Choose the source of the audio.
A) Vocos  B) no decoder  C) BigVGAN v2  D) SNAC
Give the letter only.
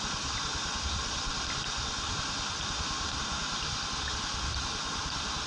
B